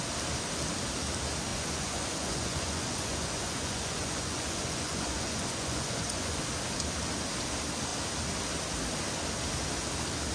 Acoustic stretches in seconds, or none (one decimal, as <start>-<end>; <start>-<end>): 0.0-1.5; 6.4-10.3